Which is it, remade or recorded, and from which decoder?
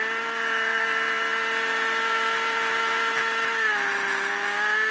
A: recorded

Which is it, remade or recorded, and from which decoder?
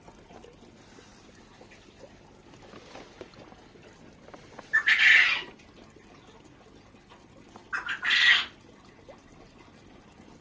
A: recorded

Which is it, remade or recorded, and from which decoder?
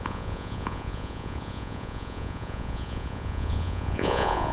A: remade, vocoder, Vocos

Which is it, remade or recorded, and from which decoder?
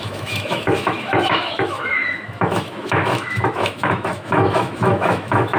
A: remade, autoencoder, DAC-VAE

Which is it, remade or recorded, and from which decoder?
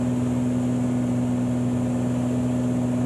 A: recorded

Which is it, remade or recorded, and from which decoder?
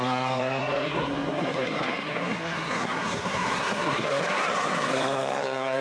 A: remade, codec, SNAC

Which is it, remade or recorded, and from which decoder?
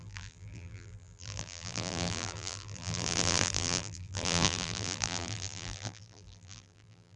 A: remade, vocoder, BigVGAN v2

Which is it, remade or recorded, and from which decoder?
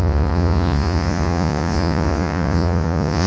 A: remade, vocoder, Vocos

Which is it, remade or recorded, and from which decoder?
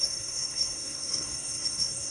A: remade, codec, SNAC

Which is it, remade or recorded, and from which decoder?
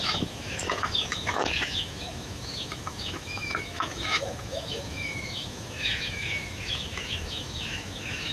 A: remade, autoencoder, DAC-VAE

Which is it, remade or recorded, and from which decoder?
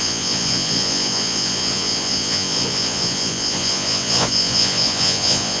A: remade, vocoder, Vocos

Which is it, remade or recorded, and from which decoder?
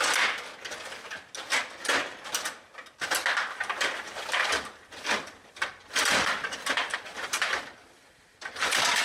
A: recorded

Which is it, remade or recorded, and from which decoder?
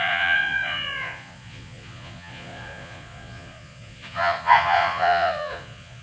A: remade, vocoder, Vocos